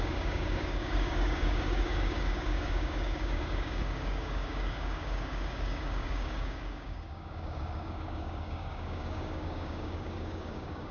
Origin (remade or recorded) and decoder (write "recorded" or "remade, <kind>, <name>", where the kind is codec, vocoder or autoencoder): remade, codec, DAC